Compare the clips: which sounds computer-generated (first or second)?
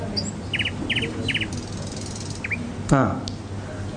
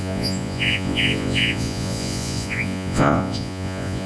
second